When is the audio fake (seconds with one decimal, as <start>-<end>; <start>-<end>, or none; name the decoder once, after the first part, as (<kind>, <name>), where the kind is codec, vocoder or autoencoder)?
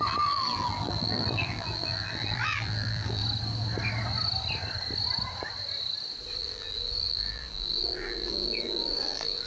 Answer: 0.0-3.2 (vocoder, BigVGAN v2); 6.4-9.5